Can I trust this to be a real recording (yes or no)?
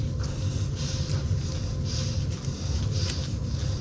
yes